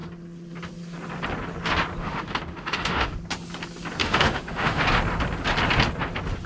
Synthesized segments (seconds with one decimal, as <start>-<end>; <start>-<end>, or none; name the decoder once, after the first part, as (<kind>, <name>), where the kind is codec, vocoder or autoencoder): 2.0-3.2 (autoencoder, DAC-VAE); 4.0-4.8